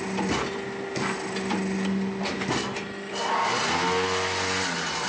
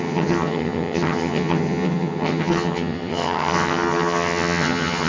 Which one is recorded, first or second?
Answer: first